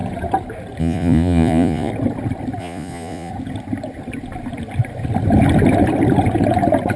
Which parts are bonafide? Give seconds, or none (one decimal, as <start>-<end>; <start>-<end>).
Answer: 0.0-0.8; 1.9-2.6; 3.3-7.0